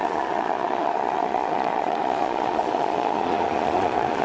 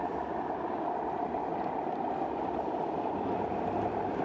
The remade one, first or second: first